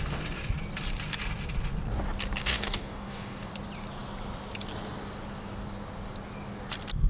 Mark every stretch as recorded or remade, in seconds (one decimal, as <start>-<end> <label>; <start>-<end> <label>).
0.0-2.4 recorded; 2.4-3.5 remade; 3.5-7.1 recorded